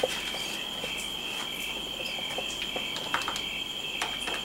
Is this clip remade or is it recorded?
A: recorded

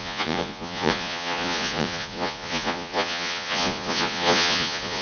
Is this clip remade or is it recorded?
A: remade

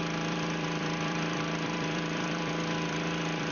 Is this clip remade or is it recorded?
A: remade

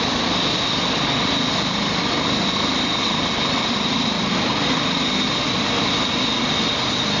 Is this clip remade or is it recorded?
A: recorded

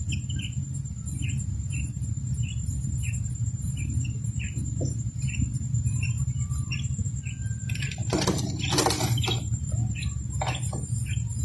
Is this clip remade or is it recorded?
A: recorded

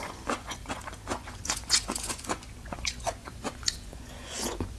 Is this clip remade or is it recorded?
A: remade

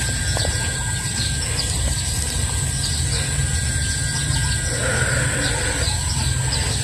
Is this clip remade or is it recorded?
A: recorded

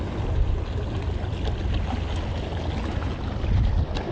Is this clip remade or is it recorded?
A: recorded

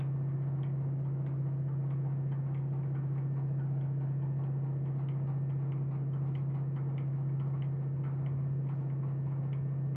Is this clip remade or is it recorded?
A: recorded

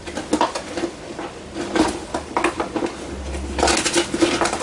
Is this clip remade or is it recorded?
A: recorded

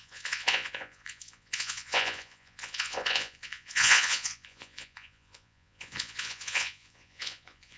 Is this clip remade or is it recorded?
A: remade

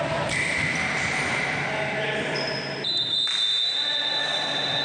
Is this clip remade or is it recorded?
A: recorded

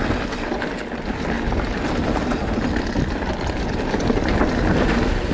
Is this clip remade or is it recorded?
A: recorded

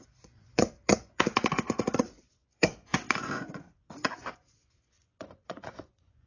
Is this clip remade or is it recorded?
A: remade